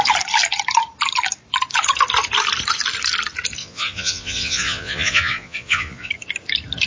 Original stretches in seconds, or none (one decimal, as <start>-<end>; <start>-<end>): 0.0-3.6; 6.1-6.9